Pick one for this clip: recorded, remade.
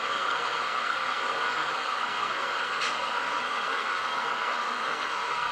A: remade